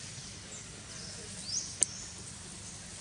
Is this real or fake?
real